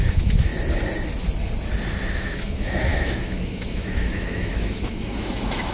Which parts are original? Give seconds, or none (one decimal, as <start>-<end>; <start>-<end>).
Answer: 0.5-2.1